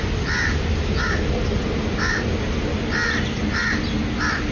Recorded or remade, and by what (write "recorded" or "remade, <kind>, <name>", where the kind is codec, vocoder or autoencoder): recorded